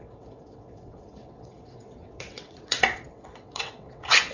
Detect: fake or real fake